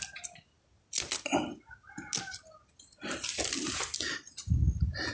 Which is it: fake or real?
real